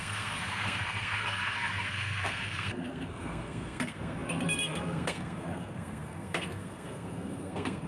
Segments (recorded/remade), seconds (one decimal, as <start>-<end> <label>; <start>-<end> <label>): 0.0-7.9 remade